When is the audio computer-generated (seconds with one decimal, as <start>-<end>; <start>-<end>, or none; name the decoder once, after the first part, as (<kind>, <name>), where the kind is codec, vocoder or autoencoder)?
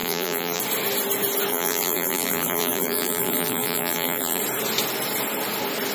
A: 0.0-0.6 (vocoder, BigVGAN v2); 1.5-4.4